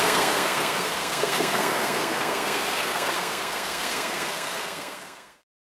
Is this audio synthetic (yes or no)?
yes